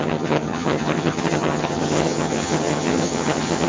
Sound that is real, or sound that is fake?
fake